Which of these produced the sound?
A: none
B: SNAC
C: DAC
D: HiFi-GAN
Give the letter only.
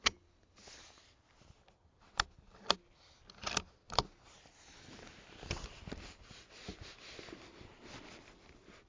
A